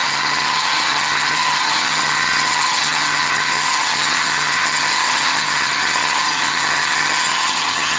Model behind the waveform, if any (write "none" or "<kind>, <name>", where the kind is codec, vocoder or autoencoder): vocoder, HiFi-GAN